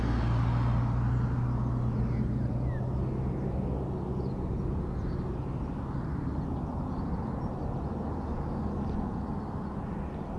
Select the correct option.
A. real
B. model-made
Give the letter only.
A